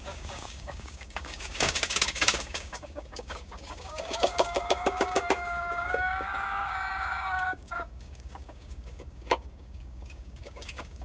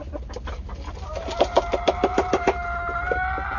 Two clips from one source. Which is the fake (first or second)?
first